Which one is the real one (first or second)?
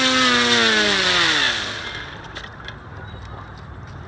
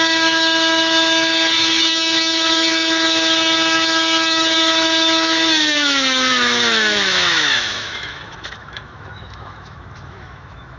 first